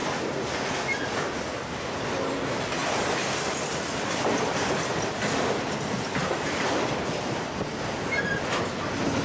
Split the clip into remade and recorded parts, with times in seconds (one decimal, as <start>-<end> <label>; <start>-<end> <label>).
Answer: 0.0-1.0 remade; 1.0-1.5 recorded; 1.5-2.3 remade; 2.3-2.8 recorded; 2.8-3.5 remade; 3.5-9.2 recorded